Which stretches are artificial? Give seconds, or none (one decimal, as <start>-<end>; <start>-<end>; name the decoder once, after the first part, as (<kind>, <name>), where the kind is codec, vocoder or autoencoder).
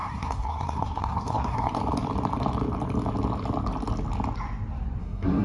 0.0-1.8 (codec, SNAC); 5.0-5.4